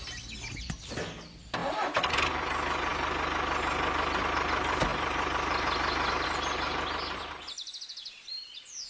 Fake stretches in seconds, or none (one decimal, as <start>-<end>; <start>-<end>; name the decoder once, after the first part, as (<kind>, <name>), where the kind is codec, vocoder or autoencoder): none